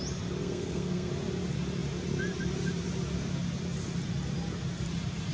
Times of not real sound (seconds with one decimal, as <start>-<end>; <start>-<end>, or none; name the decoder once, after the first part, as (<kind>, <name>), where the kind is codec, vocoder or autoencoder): 0.4-1.1 (codec, SNAC)